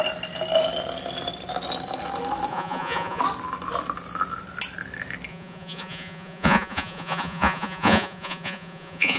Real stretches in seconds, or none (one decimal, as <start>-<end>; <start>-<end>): 0.0-2.5; 3.2-5.3